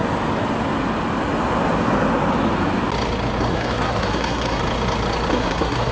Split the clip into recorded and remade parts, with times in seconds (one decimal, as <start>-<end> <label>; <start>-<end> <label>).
0.0-3.5 recorded; 3.5-4.6 remade; 4.6-5.3 recorded; 5.3-5.9 remade